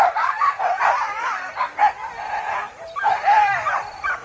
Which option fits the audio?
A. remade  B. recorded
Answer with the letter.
A